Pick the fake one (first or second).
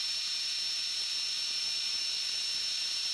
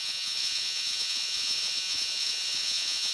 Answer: second